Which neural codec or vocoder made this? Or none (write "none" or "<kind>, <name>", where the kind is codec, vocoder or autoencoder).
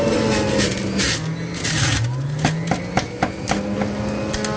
none